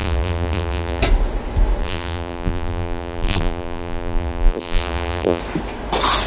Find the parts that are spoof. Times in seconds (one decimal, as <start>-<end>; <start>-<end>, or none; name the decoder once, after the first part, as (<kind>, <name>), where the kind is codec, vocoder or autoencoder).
0.0-1.0 (vocoder, BigVGAN v2); 1.8-5.4